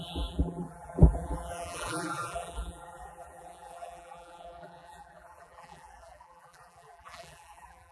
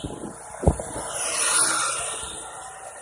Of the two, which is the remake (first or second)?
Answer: first